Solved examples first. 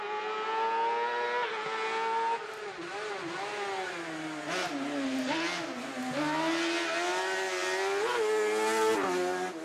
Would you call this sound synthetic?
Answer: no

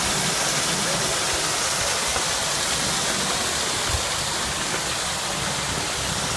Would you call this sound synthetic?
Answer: no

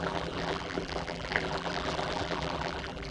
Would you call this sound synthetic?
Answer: yes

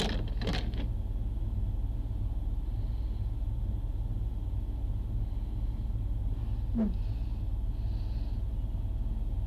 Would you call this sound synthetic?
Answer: no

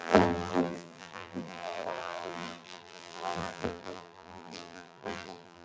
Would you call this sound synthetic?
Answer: yes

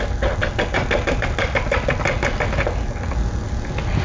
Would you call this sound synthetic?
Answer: no